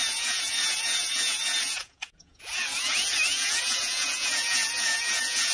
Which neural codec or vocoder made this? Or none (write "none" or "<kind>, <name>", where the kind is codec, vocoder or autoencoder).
vocoder, Vocos